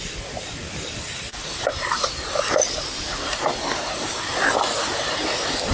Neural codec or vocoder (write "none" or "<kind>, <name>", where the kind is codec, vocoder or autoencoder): vocoder, BigVGAN v2